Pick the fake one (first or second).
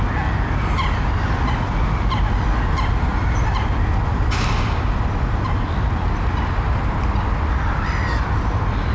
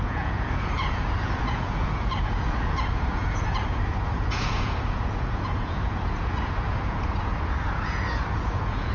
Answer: second